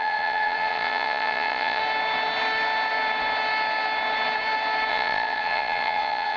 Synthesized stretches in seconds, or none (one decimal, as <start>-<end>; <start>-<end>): 0.0-1.8; 4.9-6.4